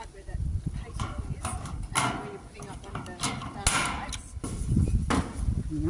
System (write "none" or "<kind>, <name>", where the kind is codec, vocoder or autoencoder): none